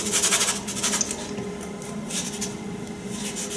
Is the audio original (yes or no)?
yes